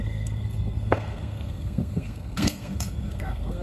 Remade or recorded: remade